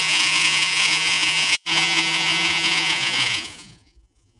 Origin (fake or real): fake